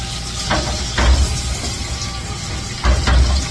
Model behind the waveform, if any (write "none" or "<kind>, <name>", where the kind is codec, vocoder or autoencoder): none